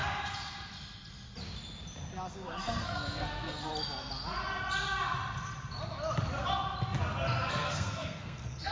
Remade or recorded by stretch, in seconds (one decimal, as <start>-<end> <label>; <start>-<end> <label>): 0.0-2.3 recorded; 2.3-3.7 remade; 3.7-7.5 recorded; 7.5-8.7 remade